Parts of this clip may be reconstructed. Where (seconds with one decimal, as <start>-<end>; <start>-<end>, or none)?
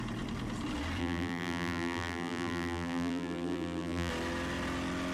1.0-4.1